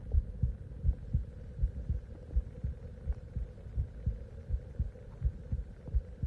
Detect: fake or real real